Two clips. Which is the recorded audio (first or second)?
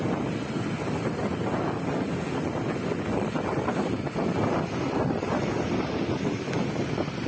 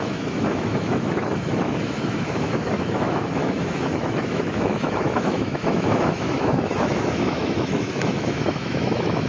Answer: first